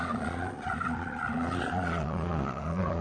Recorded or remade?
remade